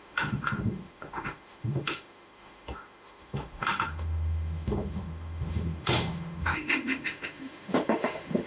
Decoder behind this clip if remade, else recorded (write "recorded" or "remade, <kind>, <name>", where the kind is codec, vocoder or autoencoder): remade, autoencoder, DAC-VAE